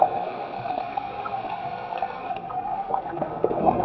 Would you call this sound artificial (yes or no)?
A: yes